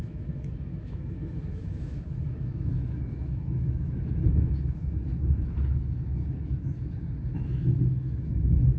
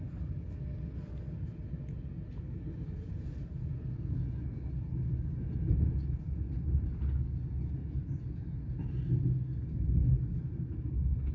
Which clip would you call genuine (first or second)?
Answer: second